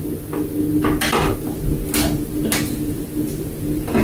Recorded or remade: recorded